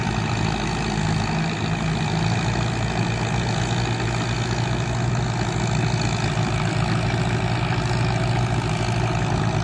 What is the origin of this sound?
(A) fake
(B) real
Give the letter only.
B